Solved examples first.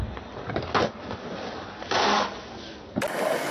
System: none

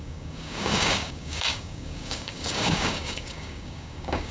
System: codec, DAC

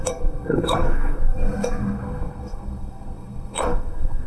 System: codec, SNAC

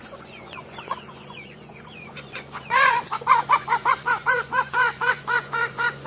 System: vocoder, Vocos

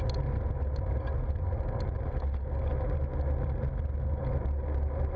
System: none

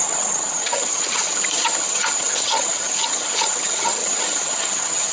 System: vocoder, HiFi-GAN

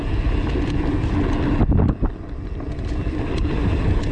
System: none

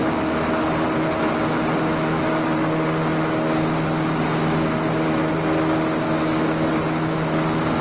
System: none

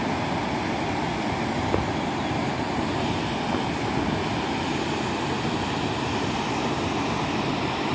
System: none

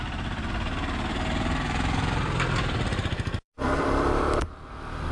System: vocoder, BigVGAN v2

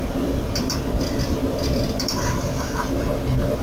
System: vocoder, BigVGAN v2